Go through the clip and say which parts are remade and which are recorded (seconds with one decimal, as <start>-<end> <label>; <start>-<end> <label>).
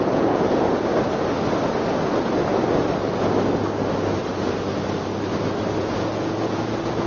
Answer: 0.0-0.9 remade; 0.9-2.1 recorded; 2.1-2.5 remade; 2.5-5.8 recorded; 5.8-7.1 remade